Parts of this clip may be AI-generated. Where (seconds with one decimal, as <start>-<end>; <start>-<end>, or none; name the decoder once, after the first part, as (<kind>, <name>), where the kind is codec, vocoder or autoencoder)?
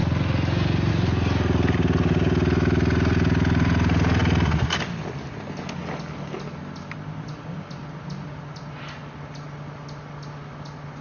none